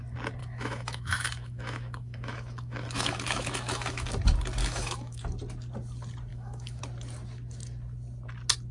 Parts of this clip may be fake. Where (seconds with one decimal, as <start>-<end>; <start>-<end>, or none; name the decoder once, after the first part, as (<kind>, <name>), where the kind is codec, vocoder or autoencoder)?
0.4-4.1 (autoencoder, DAC-VAE); 4.6-5.2; 6.3-6.8